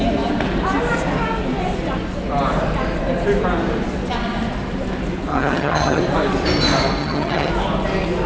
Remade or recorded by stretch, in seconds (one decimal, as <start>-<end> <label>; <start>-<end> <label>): 0.0-5.3 recorded; 5.3-6.0 remade; 6.0-7.0 recorded; 7.0-7.5 remade; 7.5-8.3 recorded